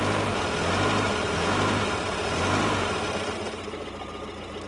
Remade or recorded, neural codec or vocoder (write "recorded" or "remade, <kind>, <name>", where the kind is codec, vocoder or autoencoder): recorded